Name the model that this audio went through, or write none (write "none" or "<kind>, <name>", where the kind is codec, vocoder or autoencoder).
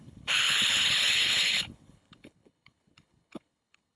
codec, HILCodec